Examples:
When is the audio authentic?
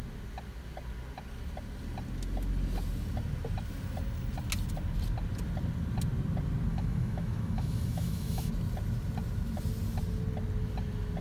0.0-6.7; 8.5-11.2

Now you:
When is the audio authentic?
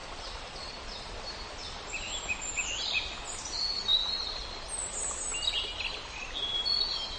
0.8-7.2